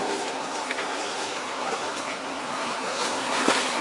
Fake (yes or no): yes